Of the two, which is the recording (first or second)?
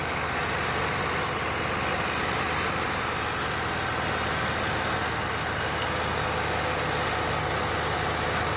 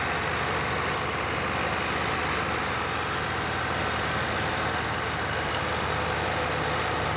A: first